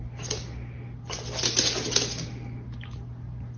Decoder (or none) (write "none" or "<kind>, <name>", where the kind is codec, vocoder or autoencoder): none